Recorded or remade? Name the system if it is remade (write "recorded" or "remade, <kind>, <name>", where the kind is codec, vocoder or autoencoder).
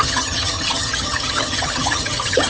remade, vocoder, HiFi-GAN